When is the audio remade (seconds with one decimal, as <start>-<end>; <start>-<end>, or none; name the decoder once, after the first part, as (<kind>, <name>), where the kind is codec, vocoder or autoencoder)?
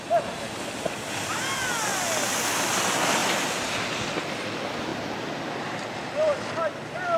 none